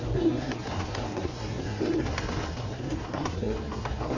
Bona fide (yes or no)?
no